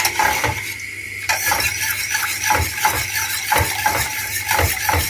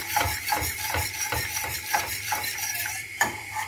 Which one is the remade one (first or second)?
second